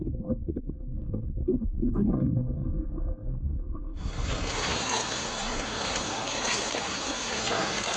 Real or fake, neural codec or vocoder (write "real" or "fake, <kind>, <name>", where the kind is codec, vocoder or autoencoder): fake, codec, SNAC